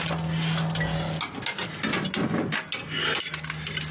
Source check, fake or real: real